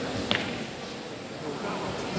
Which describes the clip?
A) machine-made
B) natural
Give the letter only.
B